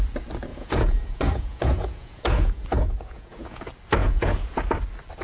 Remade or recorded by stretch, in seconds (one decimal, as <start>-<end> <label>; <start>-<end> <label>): 0.0-0.5 recorded; 0.5-3.6 remade; 3.6-4.0 recorded; 4.0-4.6 remade; 4.6-5.2 recorded